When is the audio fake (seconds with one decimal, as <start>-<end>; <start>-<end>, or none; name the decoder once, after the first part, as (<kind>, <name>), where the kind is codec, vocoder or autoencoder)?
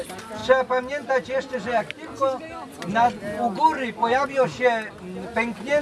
none